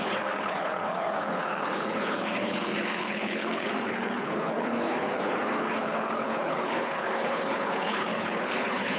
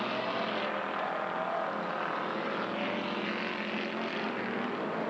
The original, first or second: second